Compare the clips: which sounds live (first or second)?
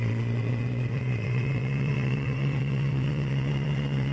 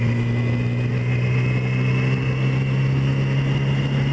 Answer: second